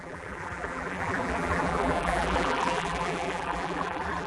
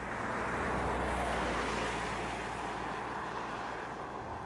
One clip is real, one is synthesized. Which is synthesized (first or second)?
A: first